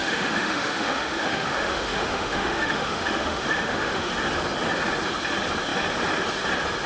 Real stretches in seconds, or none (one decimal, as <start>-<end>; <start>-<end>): 4.1-6.9